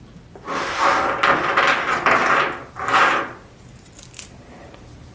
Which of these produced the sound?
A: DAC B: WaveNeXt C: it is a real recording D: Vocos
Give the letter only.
C